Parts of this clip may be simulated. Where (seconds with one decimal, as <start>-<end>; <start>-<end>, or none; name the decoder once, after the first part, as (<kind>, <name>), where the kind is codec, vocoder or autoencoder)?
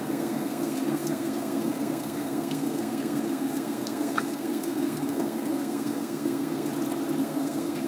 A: 0.0-6.7 (codec, SNAC); 7.2-7.9